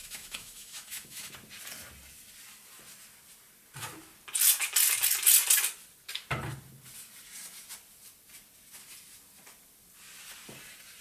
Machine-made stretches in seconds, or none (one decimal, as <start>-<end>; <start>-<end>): 0.0-1.3